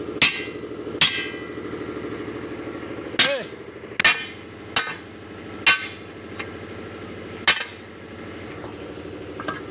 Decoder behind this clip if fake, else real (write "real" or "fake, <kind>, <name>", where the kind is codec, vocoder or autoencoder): real